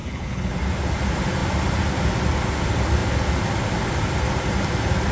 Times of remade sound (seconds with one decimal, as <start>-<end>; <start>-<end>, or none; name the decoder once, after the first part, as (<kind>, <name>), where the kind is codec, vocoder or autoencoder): 0.0-0.5 (codec, HILCodec)